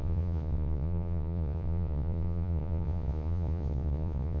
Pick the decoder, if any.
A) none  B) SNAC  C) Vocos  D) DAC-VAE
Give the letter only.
C